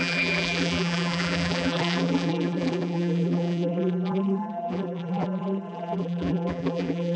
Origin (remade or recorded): remade